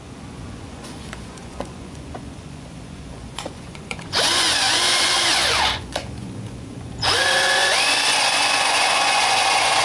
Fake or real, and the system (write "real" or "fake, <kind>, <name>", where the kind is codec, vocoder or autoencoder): fake, vocoder, Vocos